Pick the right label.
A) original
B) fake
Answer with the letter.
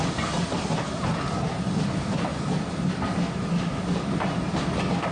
A